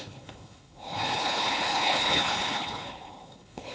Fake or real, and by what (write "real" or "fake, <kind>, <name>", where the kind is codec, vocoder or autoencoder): fake, codec, HILCodec